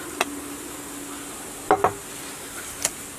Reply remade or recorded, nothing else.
recorded